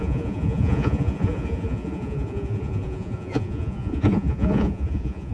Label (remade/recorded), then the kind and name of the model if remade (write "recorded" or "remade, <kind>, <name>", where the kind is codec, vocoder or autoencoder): remade, vocoder, Vocos